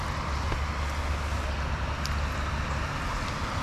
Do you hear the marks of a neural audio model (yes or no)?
no